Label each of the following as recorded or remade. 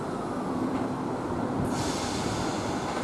recorded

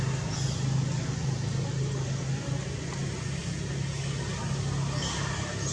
recorded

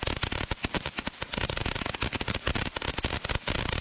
recorded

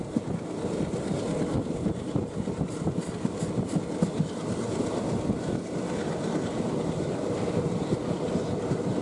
recorded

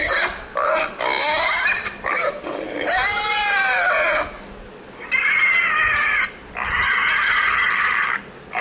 recorded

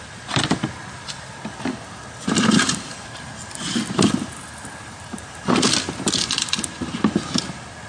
recorded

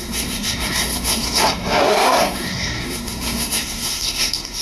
remade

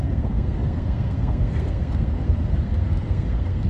remade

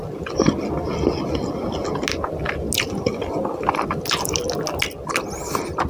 recorded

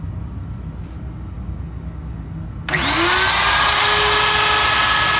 recorded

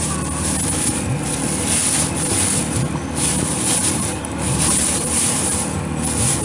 recorded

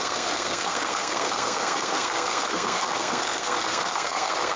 remade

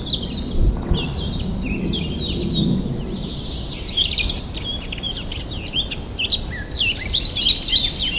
recorded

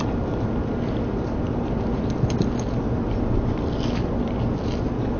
recorded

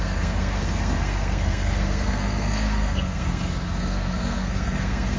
remade